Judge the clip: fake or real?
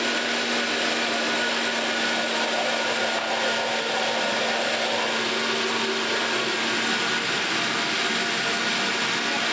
real